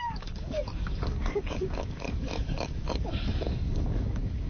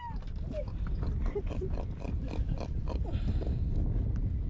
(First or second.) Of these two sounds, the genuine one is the second